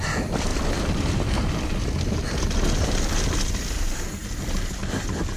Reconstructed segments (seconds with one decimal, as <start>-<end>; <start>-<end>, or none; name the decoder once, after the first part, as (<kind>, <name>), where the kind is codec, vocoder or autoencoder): none